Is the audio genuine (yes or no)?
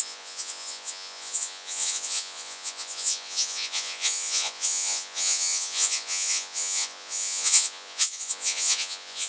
no